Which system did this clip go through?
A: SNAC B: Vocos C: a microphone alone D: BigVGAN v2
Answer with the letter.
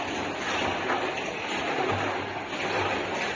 C